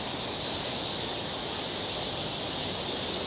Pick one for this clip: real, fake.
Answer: real